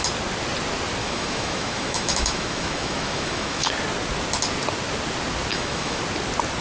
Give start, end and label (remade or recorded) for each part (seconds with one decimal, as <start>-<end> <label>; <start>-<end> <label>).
0.0-1.0 recorded; 1.0-3.7 remade; 3.7-5.5 recorded; 5.5-6.0 remade; 6.0-6.6 recorded